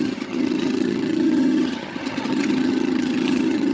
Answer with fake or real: fake